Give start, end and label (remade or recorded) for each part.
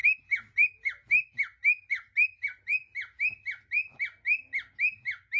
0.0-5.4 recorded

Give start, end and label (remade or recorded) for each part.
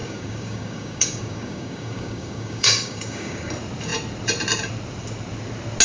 0.0-3.5 remade; 3.5-5.8 recorded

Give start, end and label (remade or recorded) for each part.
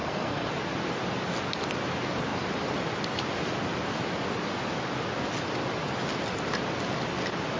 0.0-0.5 remade; 0.5-7.6 recorded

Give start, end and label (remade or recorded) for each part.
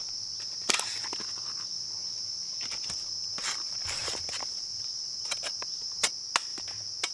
0.0-4.0 recorded; 4.0-5.5 remade; 5.5-7.1 recorded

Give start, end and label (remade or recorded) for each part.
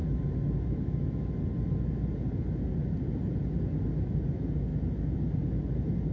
0.0-1.3 remade; 1.3-6.1 recorded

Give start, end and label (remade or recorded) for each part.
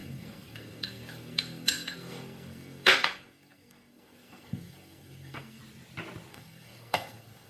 0.0-5.6 remade; 5.6-6.3 recorded; 6.3-7.5 remade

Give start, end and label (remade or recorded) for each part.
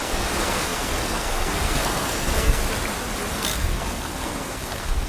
0.0-2.6 remade; 2.6-3.3 recorded; 3.3-5.1 remade